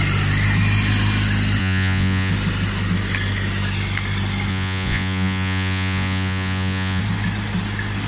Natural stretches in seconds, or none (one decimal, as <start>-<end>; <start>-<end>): 0.0-1.6; 2.3-4.5; 7.0-8.1